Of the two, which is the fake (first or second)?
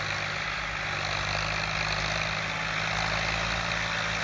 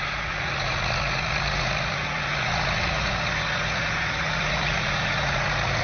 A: second